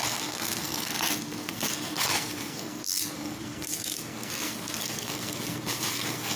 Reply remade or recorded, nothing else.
remade